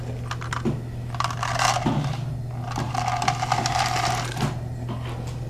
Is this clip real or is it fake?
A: real